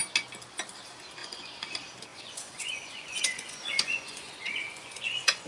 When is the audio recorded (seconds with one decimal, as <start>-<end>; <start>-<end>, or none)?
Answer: 0.0-1.2; 1.7-2.1